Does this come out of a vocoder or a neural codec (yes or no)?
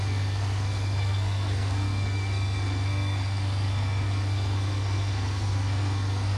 yes